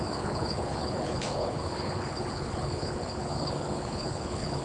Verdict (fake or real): fake